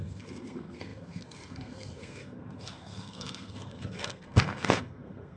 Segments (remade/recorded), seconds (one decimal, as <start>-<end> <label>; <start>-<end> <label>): 0.0-5.4 remade